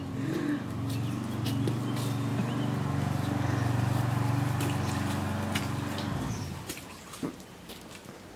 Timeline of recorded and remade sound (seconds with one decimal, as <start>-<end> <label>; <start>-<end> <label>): 0.0-8.4 recorded